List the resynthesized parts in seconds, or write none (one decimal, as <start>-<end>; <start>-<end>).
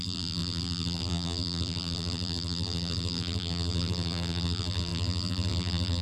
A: 0.0-6.0